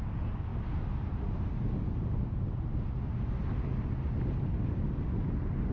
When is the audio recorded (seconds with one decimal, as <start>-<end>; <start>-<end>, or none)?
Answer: 0.0-5.7